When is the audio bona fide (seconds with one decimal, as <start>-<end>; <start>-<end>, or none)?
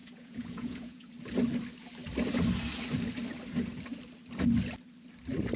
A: 1.1-5.6